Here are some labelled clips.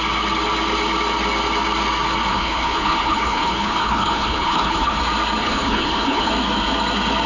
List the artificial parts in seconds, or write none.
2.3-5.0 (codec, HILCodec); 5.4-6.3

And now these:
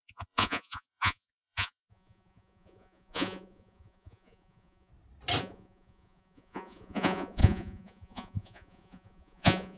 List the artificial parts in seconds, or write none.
0.0-4.9 (vocoder, Vocos); 5.4-9.8

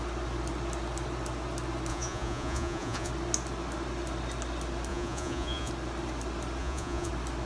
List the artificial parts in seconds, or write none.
1.9-3.1 (vocoder, Vocos); 4.9-5.7; 6.6-7.1

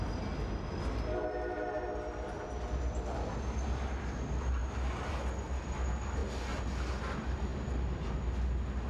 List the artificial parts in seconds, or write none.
none

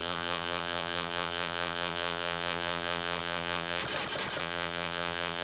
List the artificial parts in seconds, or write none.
0.0-3.8 (vocoder, BigVGAN v2); 4.4-5.4

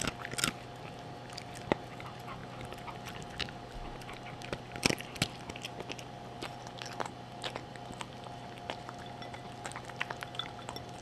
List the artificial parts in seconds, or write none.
none